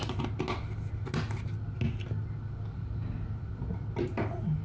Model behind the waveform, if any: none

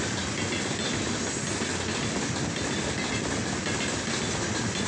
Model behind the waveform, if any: none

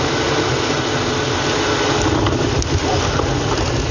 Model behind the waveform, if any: none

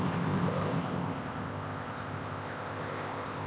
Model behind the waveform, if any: codec, ZipCodec